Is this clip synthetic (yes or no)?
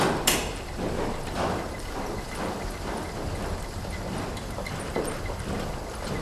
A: no